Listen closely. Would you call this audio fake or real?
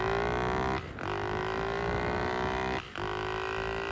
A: real